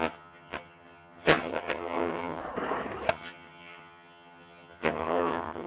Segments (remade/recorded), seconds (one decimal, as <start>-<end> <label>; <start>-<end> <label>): 0.0-2.4 remade; 2.4-3.1 recorded; 3.1-5.7 remade